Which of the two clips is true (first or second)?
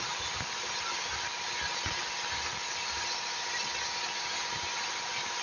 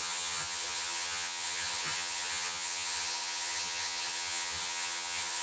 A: first